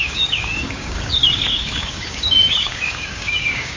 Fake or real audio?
fake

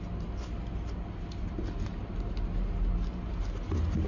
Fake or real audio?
real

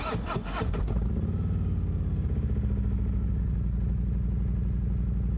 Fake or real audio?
real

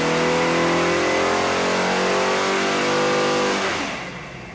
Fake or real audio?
real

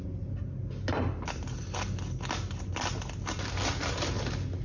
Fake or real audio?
real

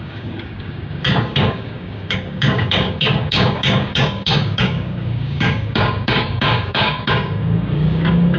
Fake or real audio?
fake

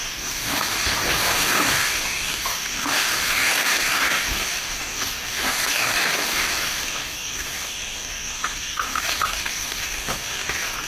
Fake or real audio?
fake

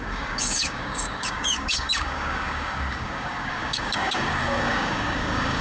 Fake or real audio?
fake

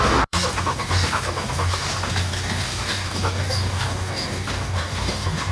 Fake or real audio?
fake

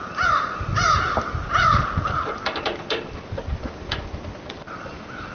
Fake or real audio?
real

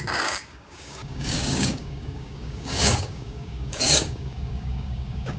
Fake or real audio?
fake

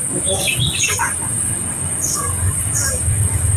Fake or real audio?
fake